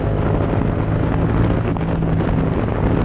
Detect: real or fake real